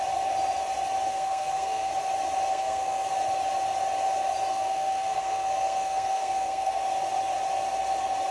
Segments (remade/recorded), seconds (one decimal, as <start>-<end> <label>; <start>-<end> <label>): 0.0-1.1 recorded; 1.1-1.9 remade; 1.9-2.5 recorded; 2.5-3.1 remade; 3.1-4.5 recorded; 4.5-6.8 remade; 6.8-8.3 recorded